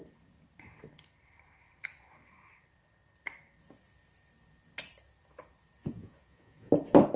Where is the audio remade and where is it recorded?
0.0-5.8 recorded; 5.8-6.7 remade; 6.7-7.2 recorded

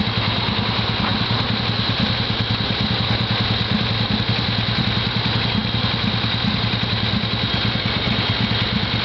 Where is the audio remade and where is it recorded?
0.0-9.0 recorded

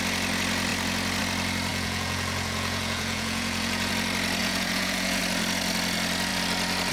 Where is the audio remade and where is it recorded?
0.0-1.7 recorded; 1.7-3.9 remade; 3.9-4.4 recorded; 4.4-5.2 remade; 5.2-6.9 recorded

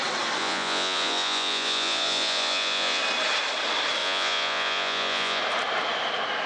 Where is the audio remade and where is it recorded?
0.0-0.4 recorded; 0.4-3.0 remade; 3.0-4.0 recorded; 4.0-5.4 remade; 5.4-6.5 recorded

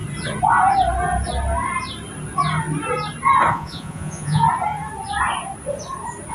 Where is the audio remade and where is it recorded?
0.0-3.5 recorded; 3.5-4.4 remade; 4.4-6.3 recorded